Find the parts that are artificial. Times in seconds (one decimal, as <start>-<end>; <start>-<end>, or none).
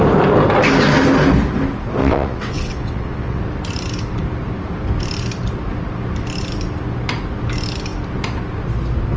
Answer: 2.0-3.4